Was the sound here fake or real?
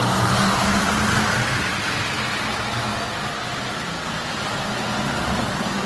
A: real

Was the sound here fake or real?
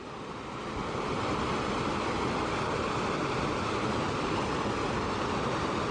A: real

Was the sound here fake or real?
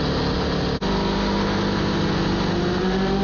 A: real